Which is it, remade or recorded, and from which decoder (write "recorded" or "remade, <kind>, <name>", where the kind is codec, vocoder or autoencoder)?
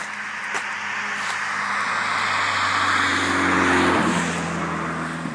recorded